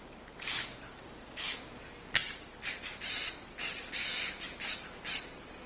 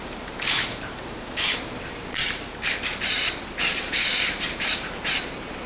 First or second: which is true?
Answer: first